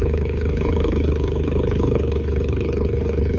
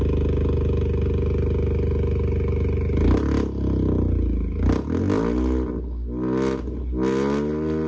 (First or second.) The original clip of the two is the second